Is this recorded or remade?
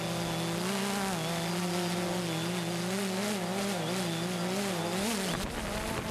recorded